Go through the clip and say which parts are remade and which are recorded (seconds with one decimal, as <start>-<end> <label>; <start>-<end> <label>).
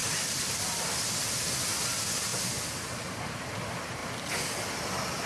0.0-0.9 remade; 0.9-5.3 recorded